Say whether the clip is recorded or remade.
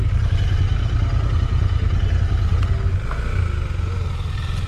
recorded